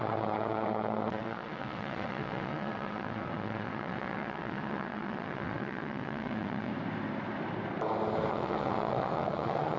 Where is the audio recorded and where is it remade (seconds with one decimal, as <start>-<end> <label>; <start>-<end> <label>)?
0.0-6.7 remade; 6.7-8.3 recorded; 8.3-9.8 remade